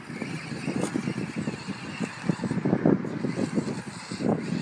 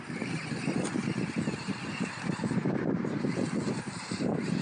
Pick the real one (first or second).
first